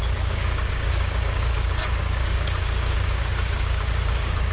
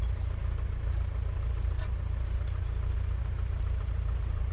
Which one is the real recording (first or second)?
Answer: second